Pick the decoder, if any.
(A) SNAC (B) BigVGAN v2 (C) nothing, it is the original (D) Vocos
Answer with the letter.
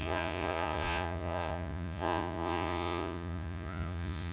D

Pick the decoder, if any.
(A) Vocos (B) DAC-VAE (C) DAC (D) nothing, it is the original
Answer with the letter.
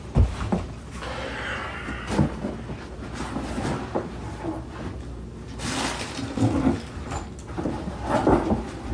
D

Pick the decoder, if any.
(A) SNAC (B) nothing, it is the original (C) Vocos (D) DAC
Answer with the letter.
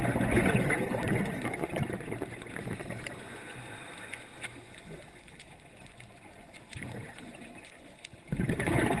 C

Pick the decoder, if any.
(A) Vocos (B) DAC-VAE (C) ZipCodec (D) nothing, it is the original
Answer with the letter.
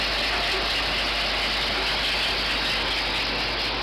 D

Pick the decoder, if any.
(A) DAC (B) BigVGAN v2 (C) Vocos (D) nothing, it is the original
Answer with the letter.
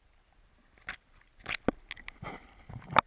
D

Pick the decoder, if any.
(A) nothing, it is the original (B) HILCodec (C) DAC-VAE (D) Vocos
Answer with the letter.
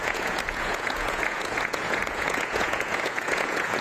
D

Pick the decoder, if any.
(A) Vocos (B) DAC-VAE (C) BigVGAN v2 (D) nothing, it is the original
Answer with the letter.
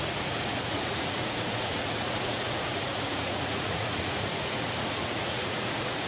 A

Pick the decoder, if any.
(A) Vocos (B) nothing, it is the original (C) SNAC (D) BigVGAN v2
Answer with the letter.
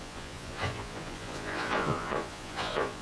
A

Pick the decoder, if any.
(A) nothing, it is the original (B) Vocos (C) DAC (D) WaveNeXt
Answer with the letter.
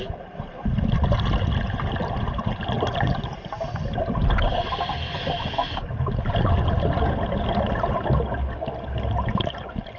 A